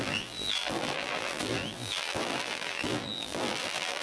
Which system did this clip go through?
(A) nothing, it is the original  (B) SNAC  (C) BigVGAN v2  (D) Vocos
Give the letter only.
C